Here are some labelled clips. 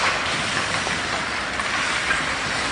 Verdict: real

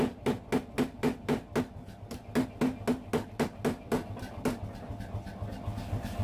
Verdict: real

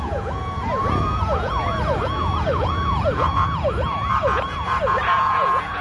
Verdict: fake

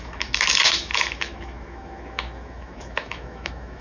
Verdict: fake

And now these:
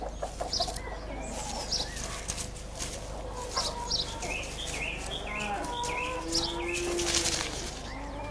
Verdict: real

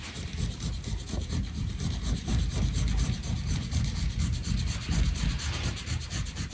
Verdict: fake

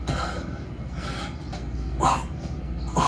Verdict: fake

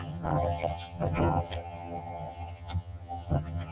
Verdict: fake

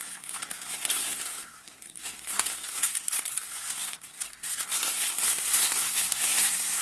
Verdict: fake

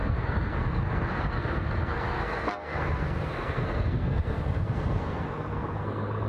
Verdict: fake